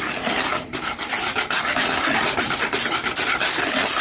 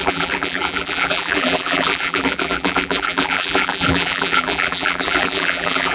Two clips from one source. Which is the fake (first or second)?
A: second